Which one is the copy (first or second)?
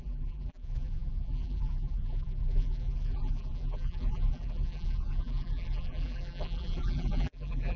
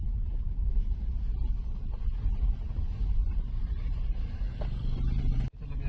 first